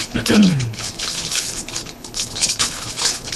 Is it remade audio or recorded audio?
remade